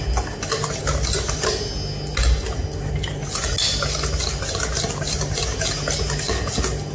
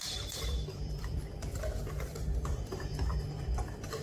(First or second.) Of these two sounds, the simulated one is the second